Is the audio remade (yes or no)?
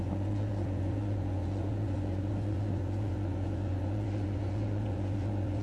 yes